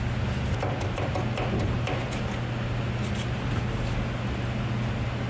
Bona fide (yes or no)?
yes